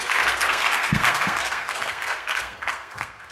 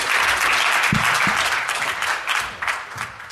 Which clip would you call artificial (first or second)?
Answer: first